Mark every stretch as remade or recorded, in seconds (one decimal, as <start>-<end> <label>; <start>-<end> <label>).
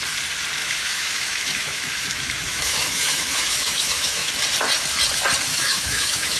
0.0-0.6 recorded; 0.6-4.3 remade; 4.3-5.5 recorded; 5.5-6.4 remade